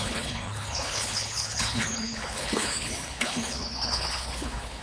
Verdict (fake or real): fake